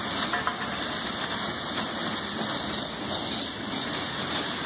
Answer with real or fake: real